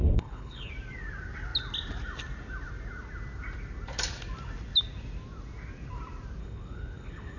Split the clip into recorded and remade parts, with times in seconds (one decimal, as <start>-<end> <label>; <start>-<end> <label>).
0.0-0.7 remade; 0.7-6.4 recorded; 6.4-7.4 remade